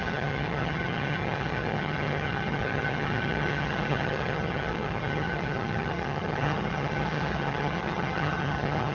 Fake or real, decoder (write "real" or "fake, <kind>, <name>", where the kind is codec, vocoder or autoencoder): fake, vocoder, HiFi-GAN